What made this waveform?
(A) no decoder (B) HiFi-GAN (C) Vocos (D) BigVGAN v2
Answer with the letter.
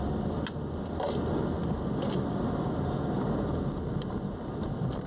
A